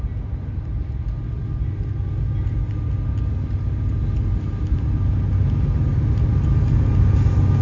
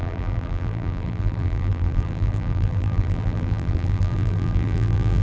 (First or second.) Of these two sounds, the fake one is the second